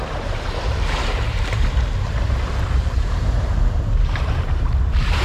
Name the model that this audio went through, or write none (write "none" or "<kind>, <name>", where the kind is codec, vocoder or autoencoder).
vocoder, BigVGAN v2